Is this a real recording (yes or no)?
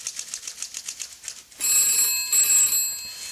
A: yes